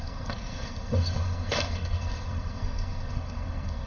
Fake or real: fake